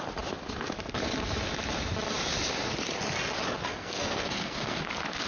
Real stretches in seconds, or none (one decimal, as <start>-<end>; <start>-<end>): 0.0-3.7; 4.8-5.3